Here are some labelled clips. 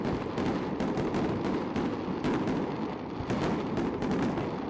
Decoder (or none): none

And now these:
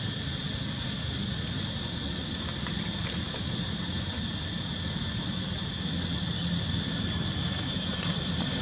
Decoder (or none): none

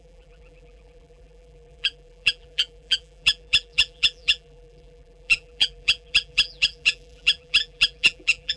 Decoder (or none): vocoder, BigVGAN v2